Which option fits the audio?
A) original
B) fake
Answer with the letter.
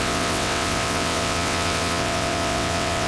B